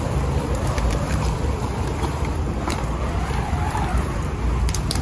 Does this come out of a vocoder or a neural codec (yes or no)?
yes